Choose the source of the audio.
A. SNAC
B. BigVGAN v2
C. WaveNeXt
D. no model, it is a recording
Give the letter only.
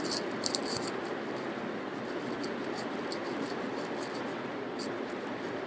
D